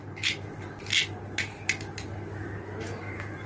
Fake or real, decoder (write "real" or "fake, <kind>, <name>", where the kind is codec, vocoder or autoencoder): real